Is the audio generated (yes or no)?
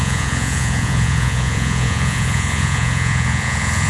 yes